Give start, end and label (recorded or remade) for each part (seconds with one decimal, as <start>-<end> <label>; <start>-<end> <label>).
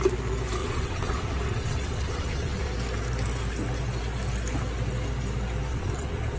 0.0-0.6 recorded; 0.6-2.7 remade; 2.7-5.7 recorded; 5.7-6.4 remade